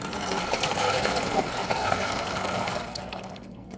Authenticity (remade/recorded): remade